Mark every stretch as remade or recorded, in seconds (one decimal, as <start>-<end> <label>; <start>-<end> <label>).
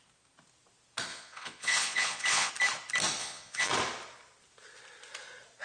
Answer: 0.0-1.1 recorded; 1.1-2.5 remade; 2.5-3.2 recorded; 3.2-3.7 remade; 3.7-5.6 recorded